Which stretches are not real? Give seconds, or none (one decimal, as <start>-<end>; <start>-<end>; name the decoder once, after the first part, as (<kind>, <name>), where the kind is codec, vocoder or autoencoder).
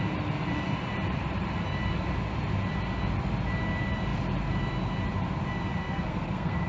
5.8-6.7 (codec, SNAC)